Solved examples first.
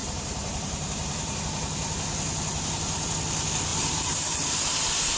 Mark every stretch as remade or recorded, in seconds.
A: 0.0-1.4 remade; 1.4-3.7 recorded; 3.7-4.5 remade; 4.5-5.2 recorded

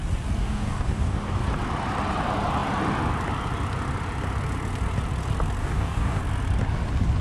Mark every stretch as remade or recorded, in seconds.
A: 0.0-0.4 recorded; 0.4-1.4 remade; 1.4-5.6 recorded; 5.6-6.2 remade; 6.2-7.2 recorded

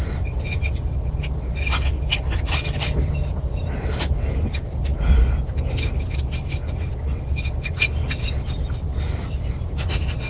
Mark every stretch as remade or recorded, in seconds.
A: 0.0-10.3 recorded